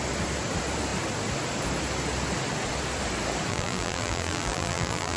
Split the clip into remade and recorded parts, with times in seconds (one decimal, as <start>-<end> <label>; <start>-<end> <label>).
0.0-3.5 recorded; 3.5-5.2 remade